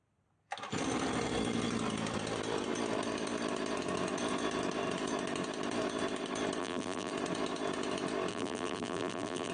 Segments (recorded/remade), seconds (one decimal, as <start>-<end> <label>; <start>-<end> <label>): 0.0-6.6 recorded; 6.6-7.1 remade; 7.1-8.3 recorded; 8.3-9.5 remade